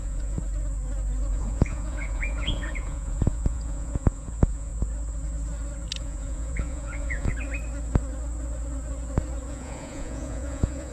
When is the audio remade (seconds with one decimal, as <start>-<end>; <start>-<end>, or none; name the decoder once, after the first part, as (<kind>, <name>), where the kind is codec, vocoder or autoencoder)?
0.0-0.4 (vocoder, Vocos); 1.3-4.7; 6.0-7.3; 9.5-10.9